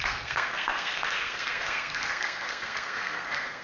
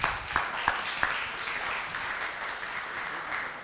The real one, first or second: second